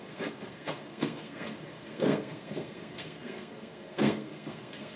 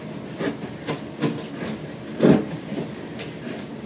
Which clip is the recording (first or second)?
second